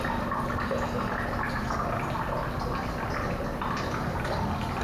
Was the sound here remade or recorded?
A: recorded